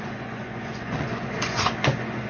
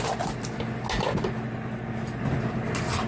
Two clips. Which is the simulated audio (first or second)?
first